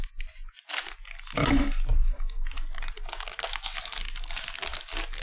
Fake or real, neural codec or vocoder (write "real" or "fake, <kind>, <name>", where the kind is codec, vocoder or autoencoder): real